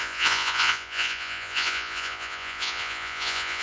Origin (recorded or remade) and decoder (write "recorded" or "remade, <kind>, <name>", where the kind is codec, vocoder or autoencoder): remade, vocoder, Vocos